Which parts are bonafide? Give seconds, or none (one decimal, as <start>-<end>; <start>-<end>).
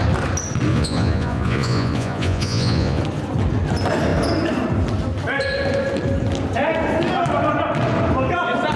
0.0-0.7; 3.0-8.8